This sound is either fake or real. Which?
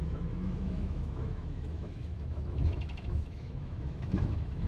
fake